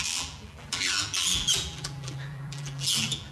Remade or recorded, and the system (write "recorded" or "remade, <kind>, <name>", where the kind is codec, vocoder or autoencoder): remade, vocoder, BigVGAN v2